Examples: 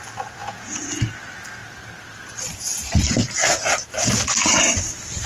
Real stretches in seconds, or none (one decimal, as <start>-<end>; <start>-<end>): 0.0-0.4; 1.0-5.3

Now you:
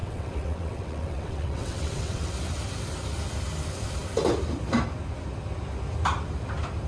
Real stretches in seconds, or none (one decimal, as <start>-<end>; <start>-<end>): 2.3-6.9

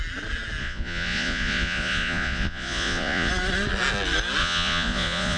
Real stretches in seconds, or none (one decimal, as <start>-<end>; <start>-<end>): 0.0-0.6; 3.3-4.4

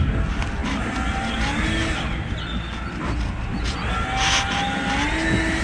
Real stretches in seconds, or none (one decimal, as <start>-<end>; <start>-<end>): 0.0-5.6

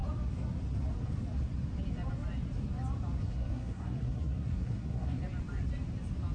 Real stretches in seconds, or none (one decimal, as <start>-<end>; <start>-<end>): 0.0-3.2; 5.2-6.3

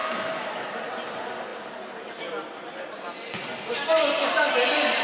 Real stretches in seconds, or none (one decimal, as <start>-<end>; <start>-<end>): 0.8-5.0

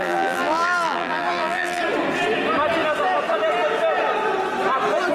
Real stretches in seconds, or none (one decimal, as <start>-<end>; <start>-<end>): 1.8-5.1

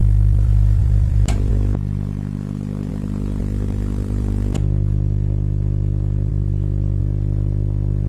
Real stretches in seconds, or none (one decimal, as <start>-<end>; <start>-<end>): 1.5-2.9; 7.0-8.1